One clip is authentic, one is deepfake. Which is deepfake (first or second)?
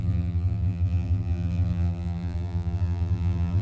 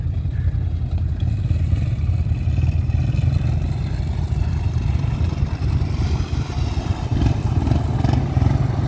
first